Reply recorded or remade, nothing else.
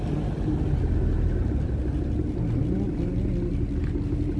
recorded